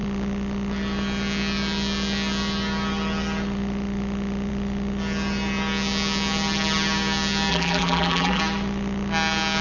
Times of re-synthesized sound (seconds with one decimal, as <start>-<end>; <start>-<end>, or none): 7.5-8.4